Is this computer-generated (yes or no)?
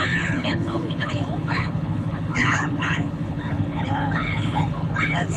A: yes